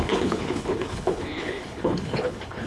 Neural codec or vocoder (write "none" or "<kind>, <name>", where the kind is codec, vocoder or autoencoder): codec, HILCodec